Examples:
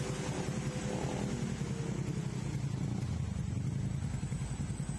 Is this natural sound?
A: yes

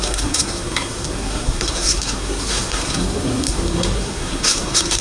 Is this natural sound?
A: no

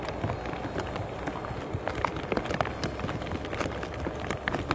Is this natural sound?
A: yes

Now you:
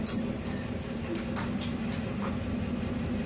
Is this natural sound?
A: yes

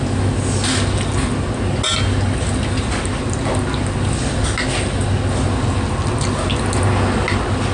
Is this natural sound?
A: yes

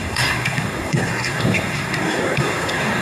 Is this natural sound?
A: no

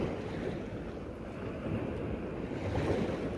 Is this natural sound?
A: yes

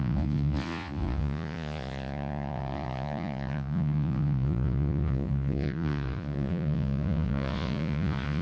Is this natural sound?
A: no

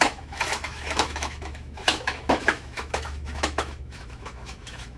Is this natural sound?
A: no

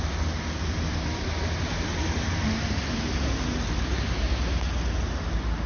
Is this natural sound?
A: yes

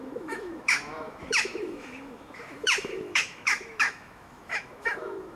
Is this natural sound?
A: no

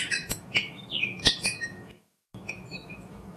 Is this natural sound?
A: no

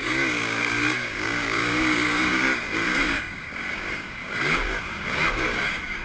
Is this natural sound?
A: no